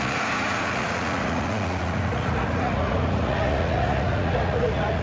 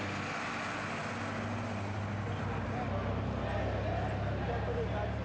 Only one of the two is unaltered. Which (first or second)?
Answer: second